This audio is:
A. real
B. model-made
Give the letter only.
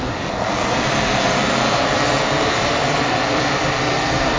B